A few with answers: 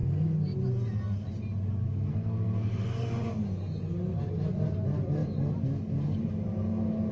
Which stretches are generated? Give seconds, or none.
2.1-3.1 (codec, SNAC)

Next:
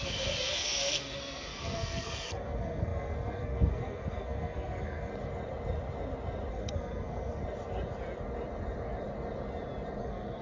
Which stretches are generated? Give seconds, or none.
0.0-5.1 (codec, SNAC); 6.5-7.4; 10.0-10.4

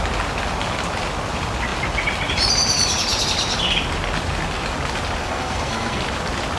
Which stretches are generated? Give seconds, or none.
5.2-6.0 (codec, SNAC)

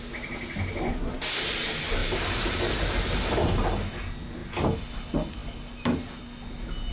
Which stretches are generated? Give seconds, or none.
0.9-1.4 (codec, SNAC)

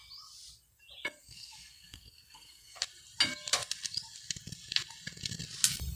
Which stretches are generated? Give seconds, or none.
1.2-2.8 (codec, SNAC)

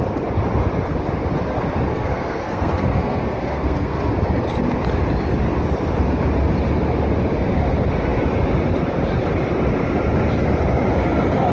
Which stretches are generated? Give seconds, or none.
1.9-4.1 (codec, SNAC)

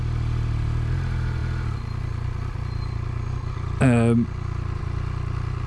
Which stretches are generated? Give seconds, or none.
none